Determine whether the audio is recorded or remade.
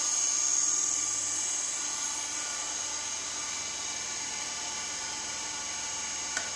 recorded